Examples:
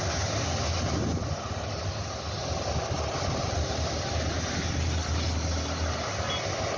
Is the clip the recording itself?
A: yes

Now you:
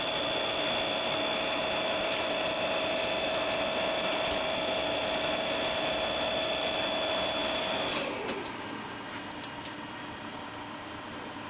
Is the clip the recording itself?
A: yes